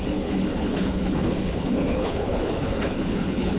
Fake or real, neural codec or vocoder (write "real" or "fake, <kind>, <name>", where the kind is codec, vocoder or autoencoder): fake, codec, HILCodec